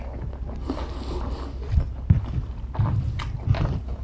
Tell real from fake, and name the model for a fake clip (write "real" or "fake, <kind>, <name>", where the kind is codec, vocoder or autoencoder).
real